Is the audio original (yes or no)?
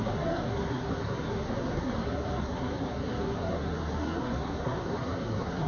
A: no